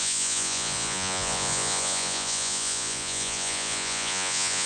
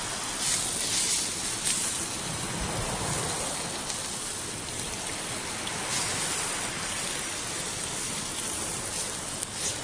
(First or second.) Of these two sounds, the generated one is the first